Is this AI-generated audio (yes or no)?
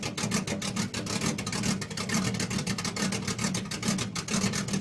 no